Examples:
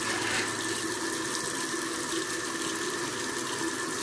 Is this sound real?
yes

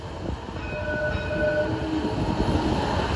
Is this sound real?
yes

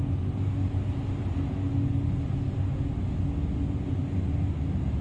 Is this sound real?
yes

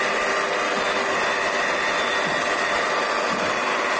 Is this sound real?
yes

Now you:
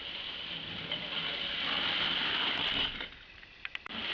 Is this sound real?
no